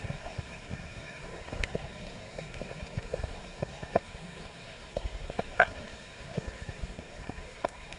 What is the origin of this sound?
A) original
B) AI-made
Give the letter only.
B